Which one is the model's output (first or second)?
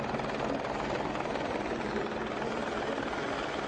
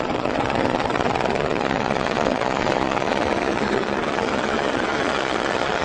second